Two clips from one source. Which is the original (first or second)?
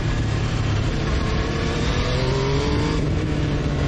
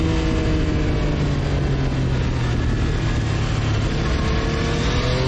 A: second